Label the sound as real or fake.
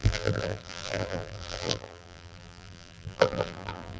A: fake